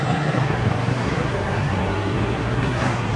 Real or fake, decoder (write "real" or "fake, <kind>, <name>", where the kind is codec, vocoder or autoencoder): fake, codec, SNAC